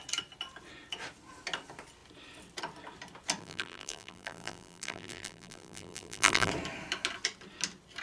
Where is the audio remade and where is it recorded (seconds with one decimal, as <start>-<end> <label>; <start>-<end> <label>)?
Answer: 0.0-3.4 recorded; 3.4-6.5 remade; 6.5-8.0 recorded